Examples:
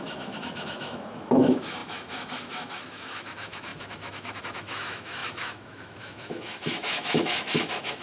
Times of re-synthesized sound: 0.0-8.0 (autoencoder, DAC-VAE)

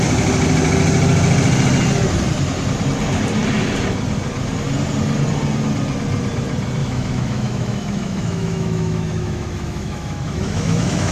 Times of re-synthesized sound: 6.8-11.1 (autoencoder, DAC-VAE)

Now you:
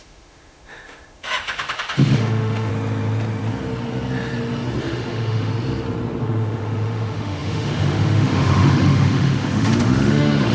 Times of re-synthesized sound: 0.0-2.7 (autoencoder, DAC-VAE); 4.8-5.5; 6.2-10.5

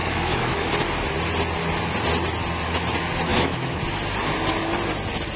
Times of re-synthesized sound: 0.0-0.7 (autoencoder, DAC-VAE); 3.3-3.8

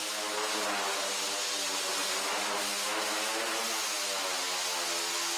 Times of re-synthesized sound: none

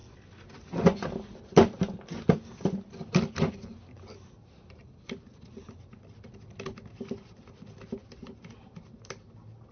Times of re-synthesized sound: none